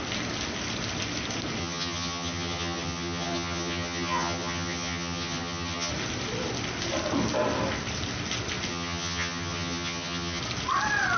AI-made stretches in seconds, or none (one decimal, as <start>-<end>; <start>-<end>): 1.6-5.9; 8.7-10.4